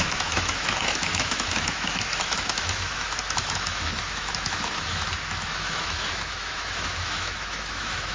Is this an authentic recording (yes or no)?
no